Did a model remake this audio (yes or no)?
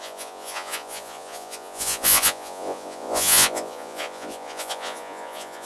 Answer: yes